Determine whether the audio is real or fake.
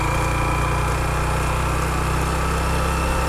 real